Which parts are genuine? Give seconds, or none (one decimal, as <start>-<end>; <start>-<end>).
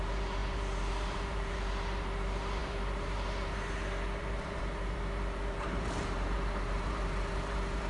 none